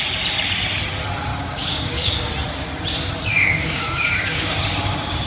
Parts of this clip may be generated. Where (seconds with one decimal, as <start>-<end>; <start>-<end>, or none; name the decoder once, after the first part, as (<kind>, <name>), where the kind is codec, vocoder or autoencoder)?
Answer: 1.3-2.3 (codec, DAC); 3.3-4.6